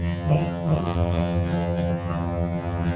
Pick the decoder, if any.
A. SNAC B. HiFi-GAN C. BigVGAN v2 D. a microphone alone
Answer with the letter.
B